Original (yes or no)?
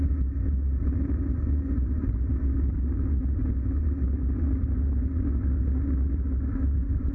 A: yes